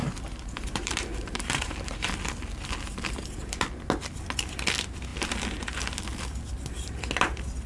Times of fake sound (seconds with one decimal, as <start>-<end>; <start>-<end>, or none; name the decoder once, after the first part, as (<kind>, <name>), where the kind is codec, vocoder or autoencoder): 0.0-2.1 (vocoder, BigVGAN v2)